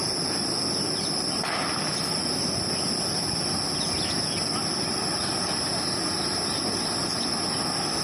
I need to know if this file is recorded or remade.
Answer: recorded